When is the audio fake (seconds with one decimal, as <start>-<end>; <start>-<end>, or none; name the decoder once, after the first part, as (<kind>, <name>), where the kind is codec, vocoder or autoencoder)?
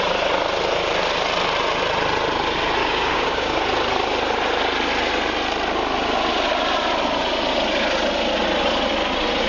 2.8-3.6 (codec, DAC)